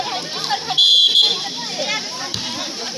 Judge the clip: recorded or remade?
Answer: remade